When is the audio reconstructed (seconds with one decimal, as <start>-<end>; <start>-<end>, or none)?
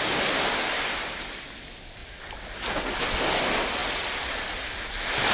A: none